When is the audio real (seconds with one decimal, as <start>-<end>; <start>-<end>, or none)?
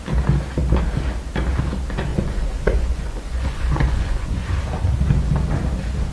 0.0-2.1; 4.5-6.1